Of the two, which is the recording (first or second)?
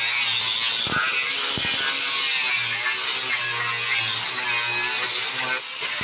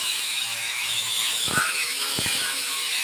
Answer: first